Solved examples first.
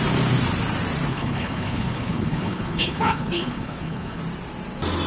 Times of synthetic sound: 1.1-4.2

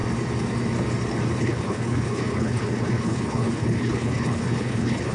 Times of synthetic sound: 1.4-5.1

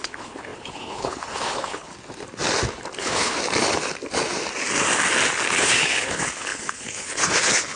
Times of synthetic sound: 0.0-1.9; 3.0-3.4; 5.6-7.8

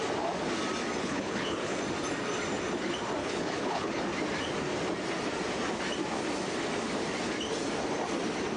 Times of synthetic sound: 1.0-1.8; 3.2-4.0